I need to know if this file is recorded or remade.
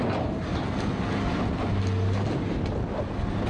recorded